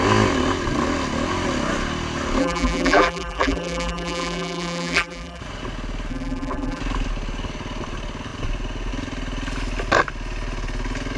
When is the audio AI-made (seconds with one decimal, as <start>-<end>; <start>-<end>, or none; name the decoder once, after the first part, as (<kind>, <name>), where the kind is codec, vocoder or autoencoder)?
2.4-5.4 (vocoder, BigVGAN v2); 6.1-6.8